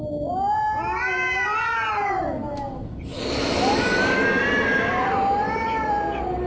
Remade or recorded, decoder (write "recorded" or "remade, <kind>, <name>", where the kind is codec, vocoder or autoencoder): recorded